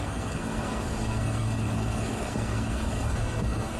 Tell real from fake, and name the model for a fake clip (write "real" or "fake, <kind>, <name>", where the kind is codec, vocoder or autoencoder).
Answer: fake, codec, SNAC